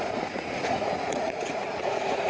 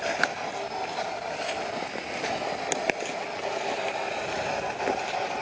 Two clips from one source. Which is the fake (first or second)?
first